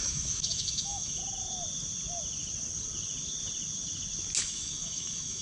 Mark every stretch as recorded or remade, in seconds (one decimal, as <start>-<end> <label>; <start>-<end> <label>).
0.0-1.2 remade; 1.2-4.4 recorded; 4.4-5.4 remade